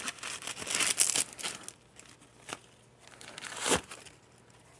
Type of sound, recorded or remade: recorded